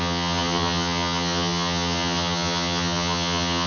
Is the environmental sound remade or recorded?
remade